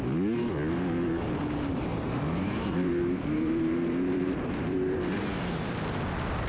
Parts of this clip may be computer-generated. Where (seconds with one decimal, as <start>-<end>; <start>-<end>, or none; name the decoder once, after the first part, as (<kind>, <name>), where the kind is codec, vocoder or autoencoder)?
1.9-5.0 (vocoder, BigVGAN v2)